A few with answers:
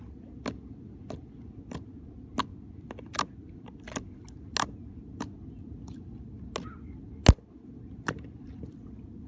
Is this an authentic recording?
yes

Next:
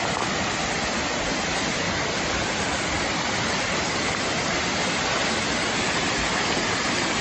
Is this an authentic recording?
yes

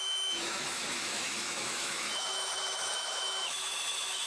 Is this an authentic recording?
no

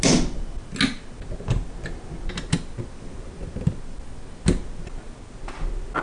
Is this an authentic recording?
yes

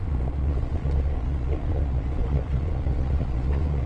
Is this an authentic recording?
no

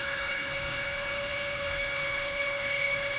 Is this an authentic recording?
no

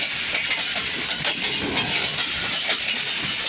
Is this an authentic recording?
yes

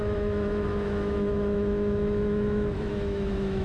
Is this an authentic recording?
no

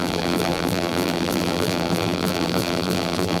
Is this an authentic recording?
no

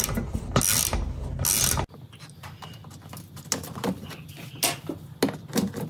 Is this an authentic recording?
yes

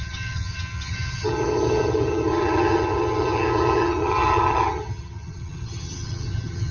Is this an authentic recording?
no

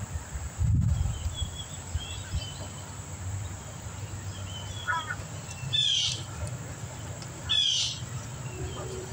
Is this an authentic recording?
no